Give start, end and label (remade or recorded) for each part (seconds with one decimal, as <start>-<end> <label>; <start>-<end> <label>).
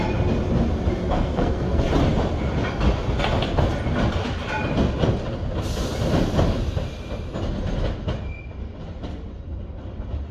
0.0-1.0 recorded; 1.0-1.9 remade; 1.9-10.3 recorded